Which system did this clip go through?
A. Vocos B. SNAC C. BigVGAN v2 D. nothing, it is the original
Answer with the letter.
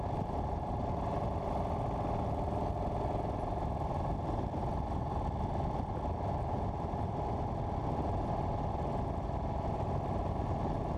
D